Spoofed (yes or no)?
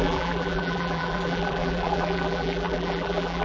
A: yes